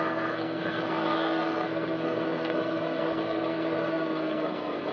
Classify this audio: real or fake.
fake